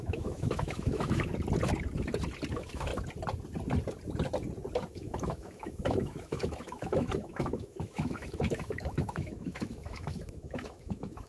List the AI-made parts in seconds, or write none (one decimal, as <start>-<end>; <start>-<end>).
0.0-1.3; 2.5-2.9; 4.9-11.3